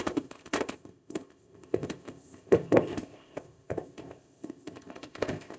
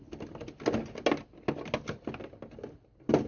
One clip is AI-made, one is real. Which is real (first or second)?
second